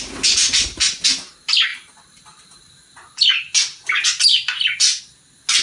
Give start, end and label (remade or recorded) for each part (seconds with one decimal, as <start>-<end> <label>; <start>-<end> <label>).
0.0-5.6 recorded